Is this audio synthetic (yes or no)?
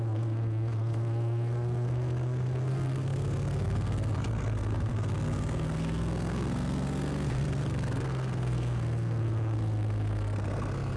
yes